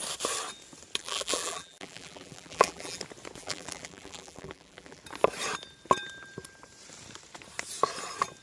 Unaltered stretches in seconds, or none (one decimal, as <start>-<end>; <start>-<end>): 0.0-1.0; 3.0-3.4; 5.0-8.4